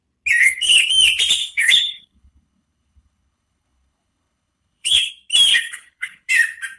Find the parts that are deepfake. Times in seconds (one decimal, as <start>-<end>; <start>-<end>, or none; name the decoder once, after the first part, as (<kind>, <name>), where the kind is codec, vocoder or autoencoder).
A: 0.4-0.9 (codec, HILCodec); 1.4-5.1; 5.5-6.3